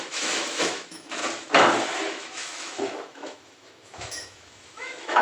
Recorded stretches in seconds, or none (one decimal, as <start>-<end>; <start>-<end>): 1.2-2.1